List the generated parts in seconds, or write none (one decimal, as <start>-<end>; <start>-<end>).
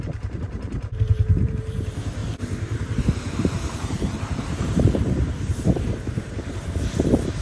0.0-2.2; 3.0-7.4